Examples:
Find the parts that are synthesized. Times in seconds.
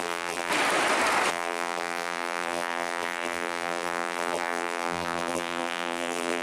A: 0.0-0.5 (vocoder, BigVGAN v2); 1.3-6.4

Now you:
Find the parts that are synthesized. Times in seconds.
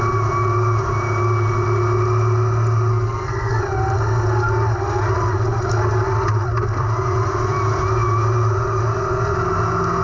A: 2.9-3.6 (codec, SNAC)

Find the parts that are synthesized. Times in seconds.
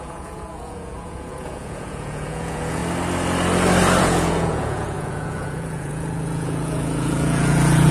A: 0.0-2.8 (vocoder, Vocos); 4.0-7.9